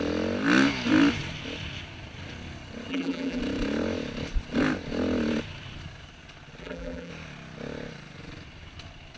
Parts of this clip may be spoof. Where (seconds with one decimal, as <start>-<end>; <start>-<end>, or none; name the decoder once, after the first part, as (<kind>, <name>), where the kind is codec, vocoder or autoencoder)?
2.9-3.4 (vocoder, BigVGAN v2); 6.6-7.1